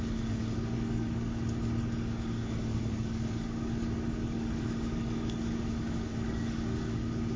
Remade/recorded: remade